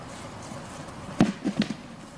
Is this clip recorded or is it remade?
remade